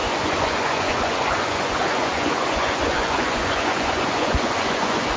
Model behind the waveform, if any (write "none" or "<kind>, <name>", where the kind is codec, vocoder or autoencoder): vocoder, Vocos